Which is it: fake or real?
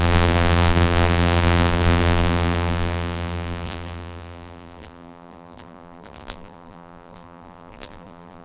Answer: fake